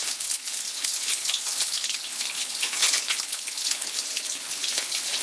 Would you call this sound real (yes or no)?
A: no